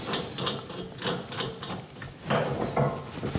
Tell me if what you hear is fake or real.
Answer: real